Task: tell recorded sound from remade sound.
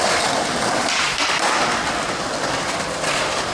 remade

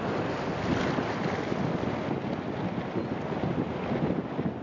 recorded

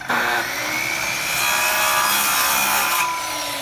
recorded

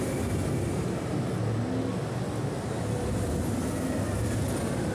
recorded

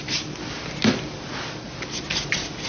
recorded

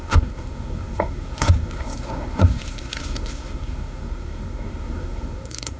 remade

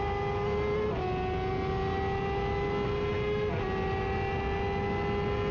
recorded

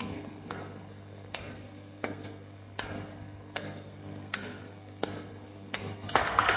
remade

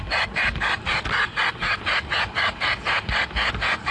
recorded